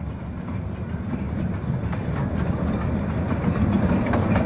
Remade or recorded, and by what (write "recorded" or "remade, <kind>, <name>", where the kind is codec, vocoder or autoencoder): recorded